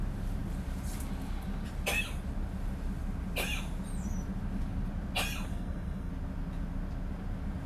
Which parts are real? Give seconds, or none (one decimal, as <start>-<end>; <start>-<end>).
0.0-5.5; 6.1-7.7

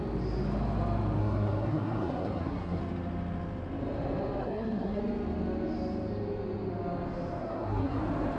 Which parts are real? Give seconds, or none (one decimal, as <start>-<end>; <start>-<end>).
0.0-1.2; 2.8-4.4; 5.0-7.4; 8.0-8.4

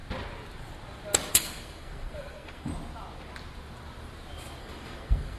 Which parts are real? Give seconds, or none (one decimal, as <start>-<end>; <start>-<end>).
0.0-1.3; 2.7-4.6

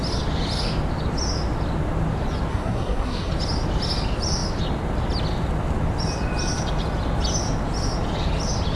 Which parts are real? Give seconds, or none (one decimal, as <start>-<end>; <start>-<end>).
0.0-2.5; 3.3-8.8